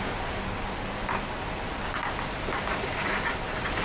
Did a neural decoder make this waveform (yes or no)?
no